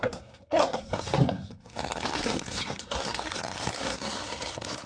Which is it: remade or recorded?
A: remade